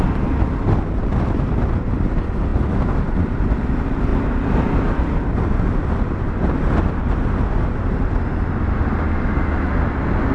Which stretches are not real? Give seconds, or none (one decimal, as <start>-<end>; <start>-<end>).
none